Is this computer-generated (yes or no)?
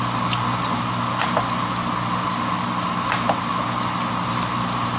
no